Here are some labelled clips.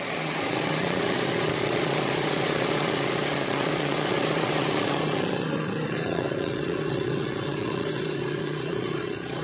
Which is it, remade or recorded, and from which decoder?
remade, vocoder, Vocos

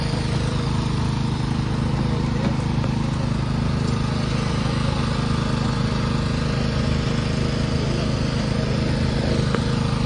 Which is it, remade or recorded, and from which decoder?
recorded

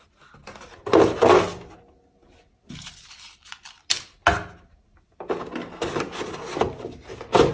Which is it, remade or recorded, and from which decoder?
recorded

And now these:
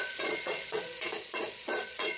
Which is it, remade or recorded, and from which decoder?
remade, vocoder, Vocos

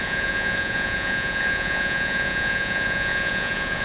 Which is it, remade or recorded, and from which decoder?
remade, vocoder, Vocos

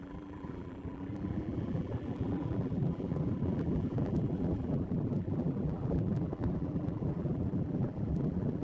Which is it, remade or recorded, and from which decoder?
remade, vocoder, BigVGAN v2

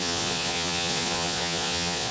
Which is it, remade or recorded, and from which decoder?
remade, vocoder, Vocos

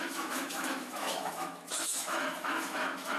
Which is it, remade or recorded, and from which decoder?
remade, autoencoder, DAC-VAE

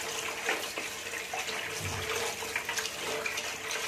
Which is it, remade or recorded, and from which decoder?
recorded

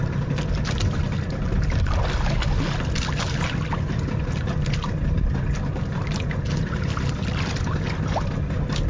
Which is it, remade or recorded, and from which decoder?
recorded